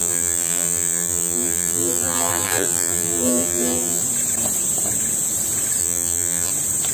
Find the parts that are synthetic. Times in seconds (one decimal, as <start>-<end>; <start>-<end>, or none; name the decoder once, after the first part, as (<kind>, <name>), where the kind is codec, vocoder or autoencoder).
0.0-4.0 (vocoder, BigVGAN v2); 5.8-6.5